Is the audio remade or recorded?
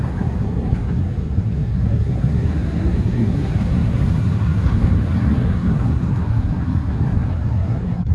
remade